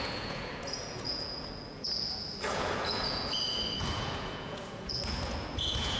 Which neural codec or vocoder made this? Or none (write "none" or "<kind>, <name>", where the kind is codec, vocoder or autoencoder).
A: vocoder, Vocos